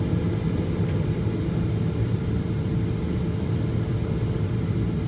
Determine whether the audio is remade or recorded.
recorded